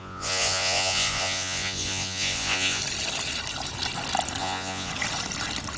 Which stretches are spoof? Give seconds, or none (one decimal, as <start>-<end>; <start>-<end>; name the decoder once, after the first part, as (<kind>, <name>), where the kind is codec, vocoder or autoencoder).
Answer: 0.0-2.8 (vocoder, Vocos); 4.4-4.9